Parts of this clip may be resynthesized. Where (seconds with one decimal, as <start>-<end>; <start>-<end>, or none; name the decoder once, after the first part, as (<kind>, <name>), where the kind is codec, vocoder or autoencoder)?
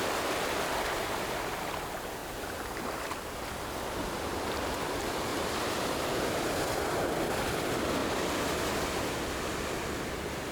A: 2.2-2.8 (vocoder, BigVGAN v2); 5.3-6.2